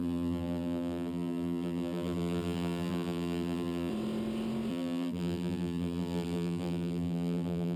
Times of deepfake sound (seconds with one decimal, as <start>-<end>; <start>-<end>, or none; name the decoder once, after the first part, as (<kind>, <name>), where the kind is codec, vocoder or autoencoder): 0.0-3.9 (vocoder, BigVGAN v2); 4.7-7.8